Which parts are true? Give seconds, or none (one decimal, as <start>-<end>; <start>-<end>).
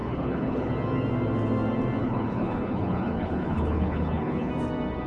0.7-2.0; 4.5-5.1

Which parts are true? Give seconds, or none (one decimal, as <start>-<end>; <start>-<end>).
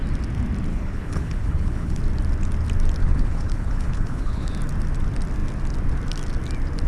0.0-0.7; 2.0-3.0; 4.5-6.9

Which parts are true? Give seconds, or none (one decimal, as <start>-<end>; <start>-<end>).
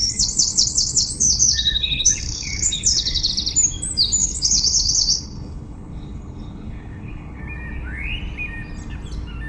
3.3-4.2; 7.4-9.5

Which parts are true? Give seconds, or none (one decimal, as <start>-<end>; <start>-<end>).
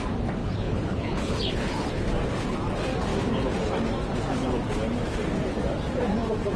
0.0-0.4; 1.9-6.6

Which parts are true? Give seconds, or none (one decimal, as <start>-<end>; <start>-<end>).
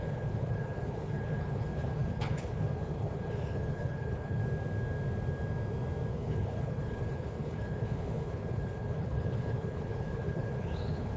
4.4-6.1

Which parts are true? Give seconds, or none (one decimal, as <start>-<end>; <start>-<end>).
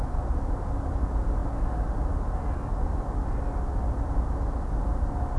0.0-5.4